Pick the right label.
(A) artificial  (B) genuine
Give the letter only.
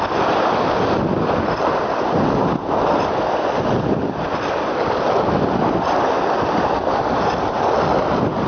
B